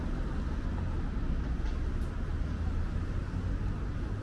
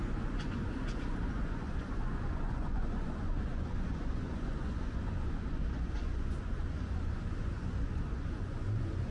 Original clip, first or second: first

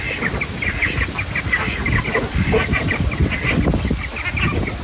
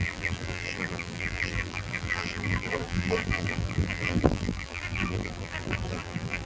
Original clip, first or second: first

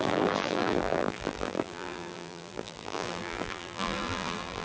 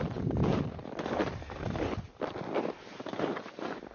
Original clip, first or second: second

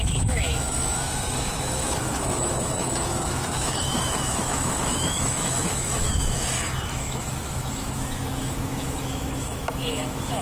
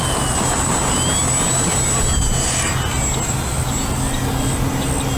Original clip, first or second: second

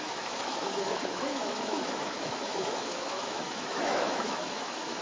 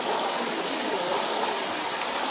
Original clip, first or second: second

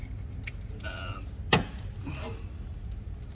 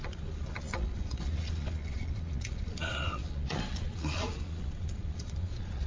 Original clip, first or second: first